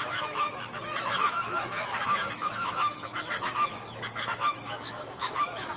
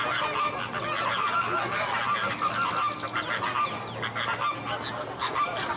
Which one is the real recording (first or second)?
second